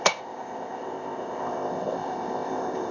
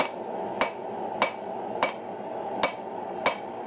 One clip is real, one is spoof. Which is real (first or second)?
second